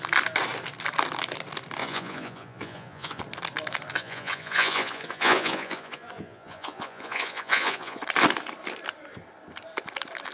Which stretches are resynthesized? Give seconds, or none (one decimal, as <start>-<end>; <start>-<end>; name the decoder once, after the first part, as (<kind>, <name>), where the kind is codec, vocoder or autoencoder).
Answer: 1.8-3.2 (vocoder, Vocos); 3.9-8.0